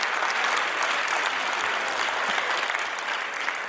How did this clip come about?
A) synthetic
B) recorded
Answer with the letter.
B